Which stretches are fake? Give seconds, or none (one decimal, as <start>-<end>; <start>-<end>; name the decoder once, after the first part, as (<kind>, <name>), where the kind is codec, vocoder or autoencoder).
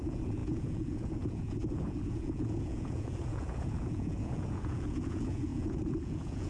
0.0-6.5 (vocoder, Vocos)